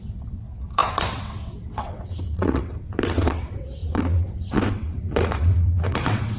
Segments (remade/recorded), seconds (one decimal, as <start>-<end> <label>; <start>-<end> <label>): 0.0-6.4 remade